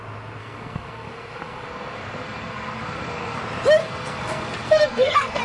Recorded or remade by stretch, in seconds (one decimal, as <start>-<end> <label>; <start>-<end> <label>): 0.0-0.4 recorded; 0.4-3.4 remade; 3.4-3.8 recorded; 3.8-5.4 remade

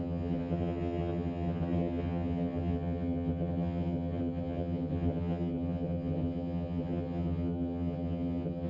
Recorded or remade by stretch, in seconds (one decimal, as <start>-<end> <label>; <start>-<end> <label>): 0.0-8.7 remade

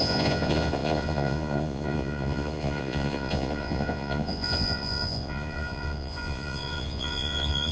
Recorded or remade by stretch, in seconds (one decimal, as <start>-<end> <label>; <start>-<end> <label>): 0.0-7.7 remade

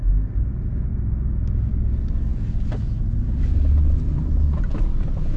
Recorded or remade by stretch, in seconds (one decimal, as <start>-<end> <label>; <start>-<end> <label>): 0.0-5.4 recorded

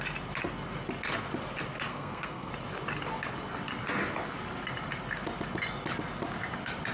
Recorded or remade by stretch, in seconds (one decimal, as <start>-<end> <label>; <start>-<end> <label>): 0.0-1.9 recorded; 1.9-2.5 remade; 2.5-6.9 recorded

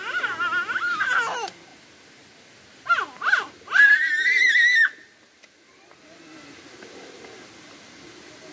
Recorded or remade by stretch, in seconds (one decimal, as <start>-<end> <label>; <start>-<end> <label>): 0.0-8.5 recorded

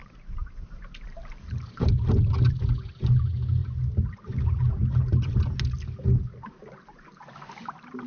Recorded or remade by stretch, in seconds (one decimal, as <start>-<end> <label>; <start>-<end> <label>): 0.0-1.9 remade; 1.9-6.6 recorded; 6.6-8.1 remade